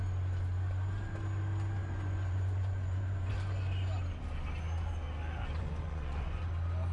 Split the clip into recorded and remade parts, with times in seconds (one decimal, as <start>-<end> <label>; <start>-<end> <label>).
0.0-1.8 recorded; 1.8-3.3 remade; 3.3-5.6 recorded; 5.6-6.5 remade; 6.5-6.9 recorded